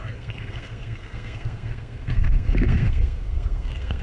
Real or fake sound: fake